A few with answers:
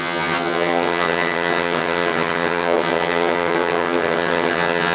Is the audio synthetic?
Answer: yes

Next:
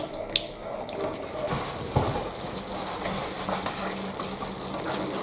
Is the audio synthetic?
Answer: no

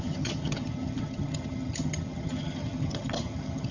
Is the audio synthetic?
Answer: yes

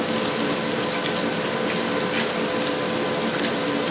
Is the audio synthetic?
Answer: no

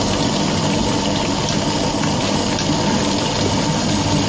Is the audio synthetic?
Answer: no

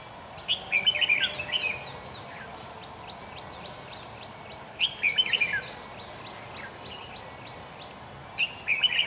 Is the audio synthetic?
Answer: no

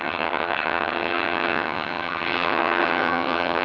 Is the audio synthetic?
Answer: yes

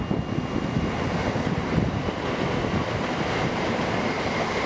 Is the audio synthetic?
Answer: no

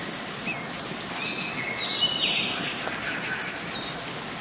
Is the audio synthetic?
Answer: no